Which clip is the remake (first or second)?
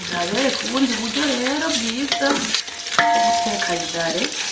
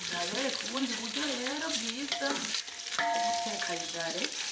second